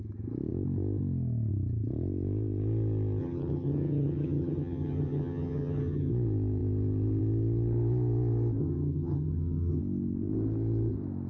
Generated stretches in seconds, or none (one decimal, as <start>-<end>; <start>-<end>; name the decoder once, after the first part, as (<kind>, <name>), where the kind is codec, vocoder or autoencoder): 3.2-6.1 (vocoder, HiFi-GAN); 8.6-9.8